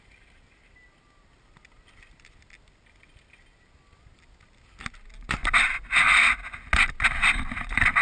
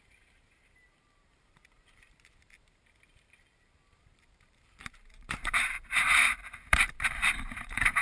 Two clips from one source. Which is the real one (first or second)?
first